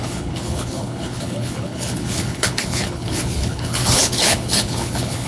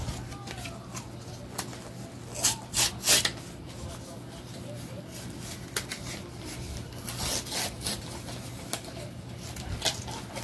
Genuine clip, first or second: second